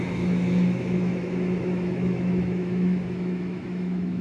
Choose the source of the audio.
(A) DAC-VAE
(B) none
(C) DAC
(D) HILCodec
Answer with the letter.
A